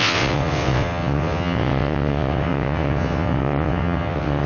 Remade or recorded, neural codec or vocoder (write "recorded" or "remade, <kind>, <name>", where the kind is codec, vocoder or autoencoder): remade, vocoder, WaveNeXt